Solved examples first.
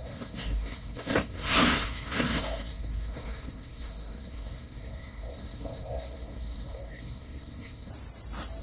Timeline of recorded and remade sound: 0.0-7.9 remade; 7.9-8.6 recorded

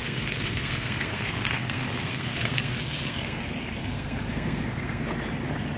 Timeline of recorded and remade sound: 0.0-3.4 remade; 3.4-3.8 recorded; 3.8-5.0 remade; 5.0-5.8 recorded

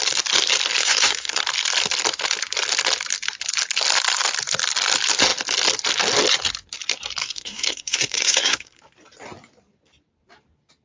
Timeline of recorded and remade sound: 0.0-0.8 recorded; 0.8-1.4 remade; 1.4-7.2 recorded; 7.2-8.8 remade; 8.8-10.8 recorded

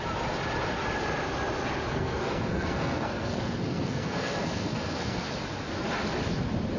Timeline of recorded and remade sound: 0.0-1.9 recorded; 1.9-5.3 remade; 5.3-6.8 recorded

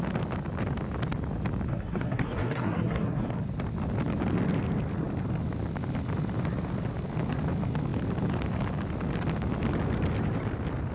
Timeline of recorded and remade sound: 0.0-1.7 recorded; 1.7-3.3 remade; 3.3-10.9 recorded

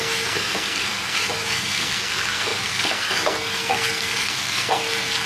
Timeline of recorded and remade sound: 0.0-5.3 remade